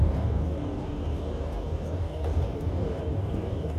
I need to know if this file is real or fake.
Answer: fake